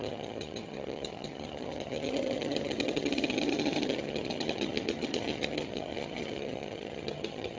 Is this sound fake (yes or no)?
yes